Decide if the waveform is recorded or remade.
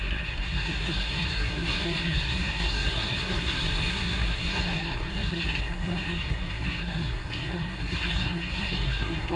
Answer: remade